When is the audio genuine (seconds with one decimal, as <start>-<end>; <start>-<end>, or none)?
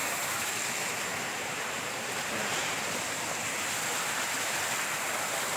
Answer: 0.5-1.1; 4.5-5.6